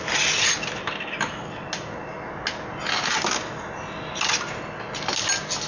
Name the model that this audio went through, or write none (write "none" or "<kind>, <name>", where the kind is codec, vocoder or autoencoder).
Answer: none